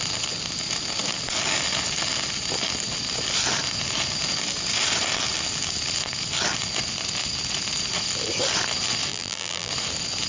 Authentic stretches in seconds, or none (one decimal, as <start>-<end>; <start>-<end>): 0.0-9.1; 9.7-10.3